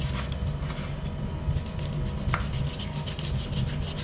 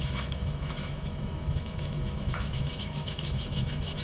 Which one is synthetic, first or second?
second